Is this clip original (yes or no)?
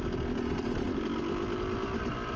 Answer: yes